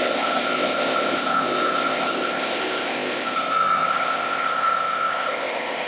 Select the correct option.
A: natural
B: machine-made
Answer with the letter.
B